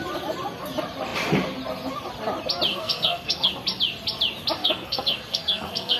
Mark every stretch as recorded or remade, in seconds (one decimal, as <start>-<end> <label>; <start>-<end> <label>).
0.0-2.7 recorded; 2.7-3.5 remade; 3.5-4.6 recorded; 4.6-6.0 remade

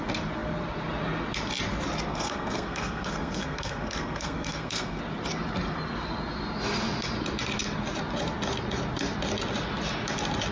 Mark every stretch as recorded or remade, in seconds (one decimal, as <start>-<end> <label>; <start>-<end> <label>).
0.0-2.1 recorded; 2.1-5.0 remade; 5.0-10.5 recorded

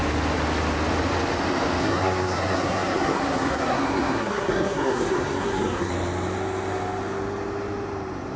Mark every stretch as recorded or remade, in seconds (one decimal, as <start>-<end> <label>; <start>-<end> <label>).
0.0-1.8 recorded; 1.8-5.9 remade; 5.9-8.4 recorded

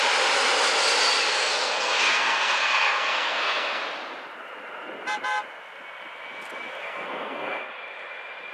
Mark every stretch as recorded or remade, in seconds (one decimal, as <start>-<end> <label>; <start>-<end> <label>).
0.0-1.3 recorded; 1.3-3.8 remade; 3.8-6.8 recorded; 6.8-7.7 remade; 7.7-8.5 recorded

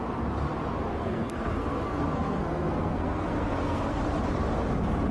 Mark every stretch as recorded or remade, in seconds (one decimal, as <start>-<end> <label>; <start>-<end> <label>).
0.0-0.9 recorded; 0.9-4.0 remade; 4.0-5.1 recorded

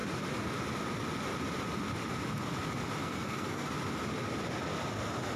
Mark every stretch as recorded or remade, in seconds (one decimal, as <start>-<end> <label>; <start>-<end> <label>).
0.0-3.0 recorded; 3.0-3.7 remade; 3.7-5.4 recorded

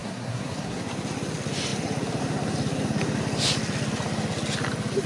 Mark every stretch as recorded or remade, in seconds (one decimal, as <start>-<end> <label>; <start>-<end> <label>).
0.0-0.8 remade; 0.8-5.1 recorded